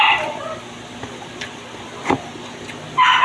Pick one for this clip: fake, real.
fake